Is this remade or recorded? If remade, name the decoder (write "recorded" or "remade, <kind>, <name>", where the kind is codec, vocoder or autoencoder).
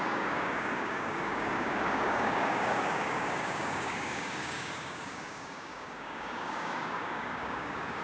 remade, codec, DAC